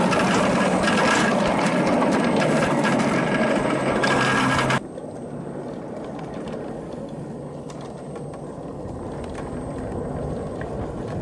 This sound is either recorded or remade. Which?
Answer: recorded